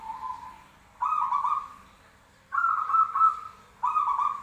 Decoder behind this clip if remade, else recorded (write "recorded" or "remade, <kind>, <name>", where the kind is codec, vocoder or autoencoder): recorded